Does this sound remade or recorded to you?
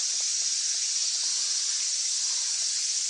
recorded